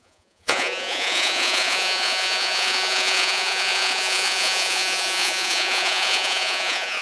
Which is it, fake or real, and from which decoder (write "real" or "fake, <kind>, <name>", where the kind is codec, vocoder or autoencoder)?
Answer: fake, vocoder, Vocos